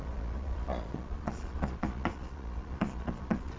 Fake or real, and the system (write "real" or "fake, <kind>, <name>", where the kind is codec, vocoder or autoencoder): fake, vocoder, Vocos